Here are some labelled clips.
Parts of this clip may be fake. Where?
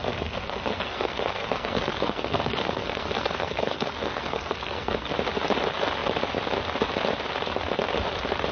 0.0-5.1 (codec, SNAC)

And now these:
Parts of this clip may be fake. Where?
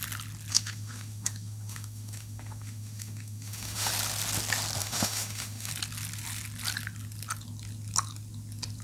0.5-3.9 (autoencoder, DAC-VAE); 4.8-5.7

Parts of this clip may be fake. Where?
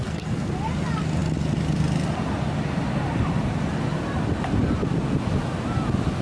0.0-0.5 (codec, SNAC)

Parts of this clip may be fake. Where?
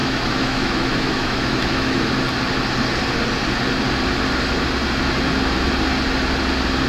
0.0-2.1 (autoencoder, DAC-VAE)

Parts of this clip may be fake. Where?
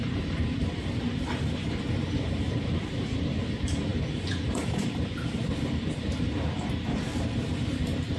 0.0-7.1 (vocoder, BigVGAN v2)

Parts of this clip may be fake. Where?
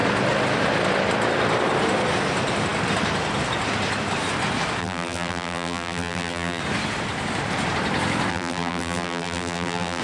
4.8-6.6 (vocoder, BigVGAN v2); 8.3-10.0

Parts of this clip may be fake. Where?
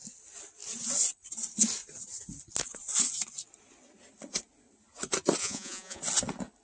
5.4-6.0 (vocoder, Vocos)